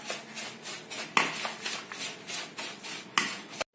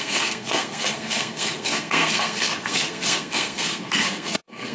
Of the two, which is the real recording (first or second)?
first